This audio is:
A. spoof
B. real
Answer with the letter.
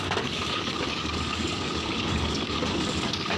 A